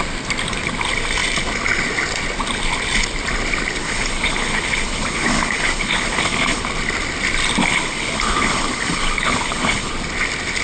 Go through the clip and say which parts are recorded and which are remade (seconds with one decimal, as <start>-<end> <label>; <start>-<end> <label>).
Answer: 0.0-3.8 recorded; 3.8-6.6 remade; 6.6-7.6 recorded; 7.6-9.9 remade; 9.9-10.6 recorded